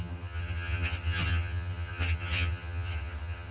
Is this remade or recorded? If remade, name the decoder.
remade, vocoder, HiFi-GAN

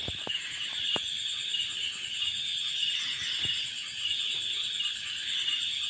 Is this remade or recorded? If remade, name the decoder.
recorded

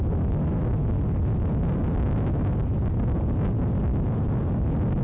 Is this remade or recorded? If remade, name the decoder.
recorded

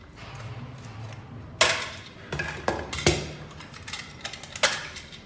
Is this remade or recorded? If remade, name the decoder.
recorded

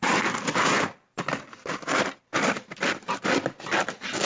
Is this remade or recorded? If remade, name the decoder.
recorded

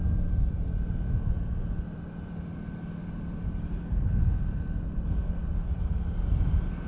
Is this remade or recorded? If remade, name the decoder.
recorded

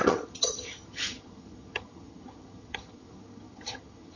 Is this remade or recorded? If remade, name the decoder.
remade, vocoder, HiFi-GAN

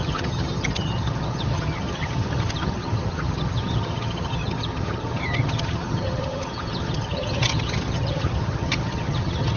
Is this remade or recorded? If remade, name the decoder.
remade, vocoder, HiFi-GAN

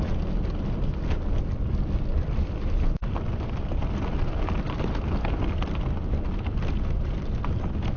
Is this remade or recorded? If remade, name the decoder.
recorded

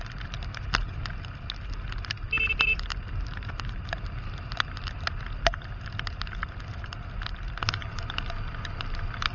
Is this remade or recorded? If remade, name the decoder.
recorded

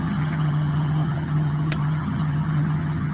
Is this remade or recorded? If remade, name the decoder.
remade, vocoder, HiFi-GAN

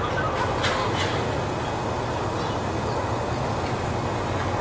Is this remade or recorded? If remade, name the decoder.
recorded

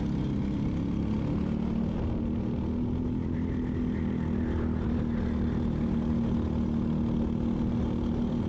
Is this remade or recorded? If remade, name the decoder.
recorded